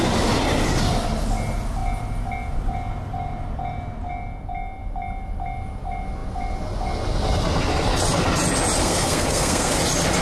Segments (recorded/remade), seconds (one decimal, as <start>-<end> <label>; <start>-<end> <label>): 0.0-8.8 recorded; 8.8-9.7 remade; 9.7-10.2 recorded